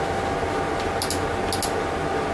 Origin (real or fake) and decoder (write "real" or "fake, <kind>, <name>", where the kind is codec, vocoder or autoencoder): real